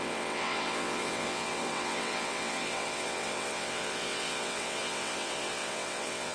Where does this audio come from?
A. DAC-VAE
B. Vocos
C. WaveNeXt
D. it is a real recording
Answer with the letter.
C